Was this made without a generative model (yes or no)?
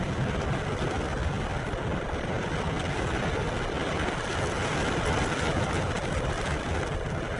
yes